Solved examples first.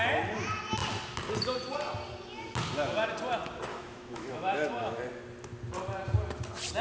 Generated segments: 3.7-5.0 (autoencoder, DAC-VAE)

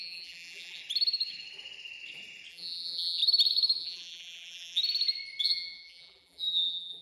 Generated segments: 0.0-0.8 (vocoder, BigVGAN v2); 2.5-3.2; 3.8-4.8; 5.4-7.0

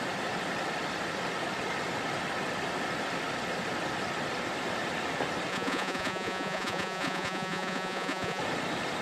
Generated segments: 5.5-8.4 (vocoder, Vocos)

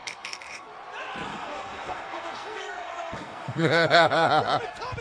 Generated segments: 0.0-0.7 (codec, SNAC); 1.3-4.3

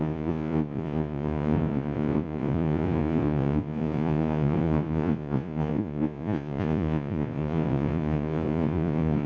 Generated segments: 0.0-9.3 (vocoder, Vocos)

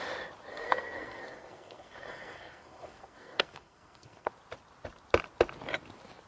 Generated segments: 0.5-4.3 (codec, SNAC)

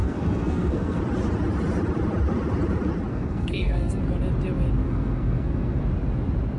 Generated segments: 0.0-1.0 (codec, SNAC); 3.1-4.0; 4.8-5.8

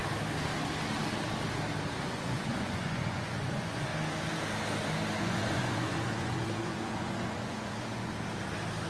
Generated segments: 2.0-3.9 (vocoder, Vocos); 5.2-8.1